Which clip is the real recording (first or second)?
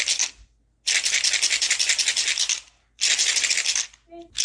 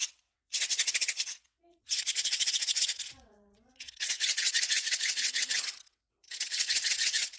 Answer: first